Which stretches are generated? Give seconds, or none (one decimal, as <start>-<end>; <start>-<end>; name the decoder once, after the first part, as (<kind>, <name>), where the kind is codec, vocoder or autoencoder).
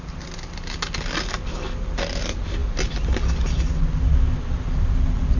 none